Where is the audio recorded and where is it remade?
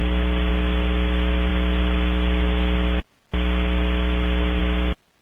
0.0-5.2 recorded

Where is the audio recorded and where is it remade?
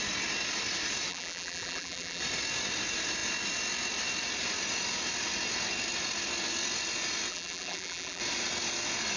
0.0-1.1 recorded; 1.1-2.2 remade; 2.2-7.3 recorded; 7.3-8.2 remade; 8.2-9.2 recorded